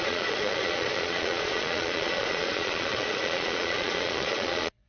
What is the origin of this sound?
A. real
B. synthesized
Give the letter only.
B